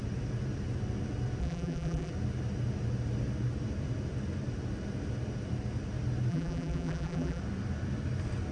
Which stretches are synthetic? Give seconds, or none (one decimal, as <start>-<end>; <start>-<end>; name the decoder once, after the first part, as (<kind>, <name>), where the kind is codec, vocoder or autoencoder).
1.4-2.1 (vocoder, BigVGAN v2); 6.3-7.4